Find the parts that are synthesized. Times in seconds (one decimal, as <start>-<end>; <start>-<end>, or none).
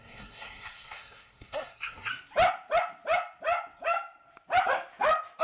0.0-2.1